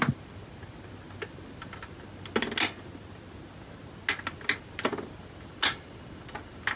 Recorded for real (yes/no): yes